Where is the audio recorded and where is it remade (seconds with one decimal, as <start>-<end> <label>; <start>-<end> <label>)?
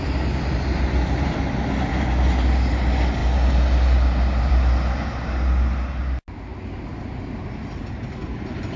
0.0-8.8 recorded